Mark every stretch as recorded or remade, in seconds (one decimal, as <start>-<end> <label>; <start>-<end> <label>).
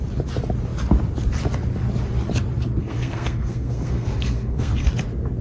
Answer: 0.0-2.8 recorded; 2.8-4.9 remade; 4.9-5.4 recorded